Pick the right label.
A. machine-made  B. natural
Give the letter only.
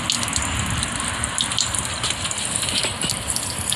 B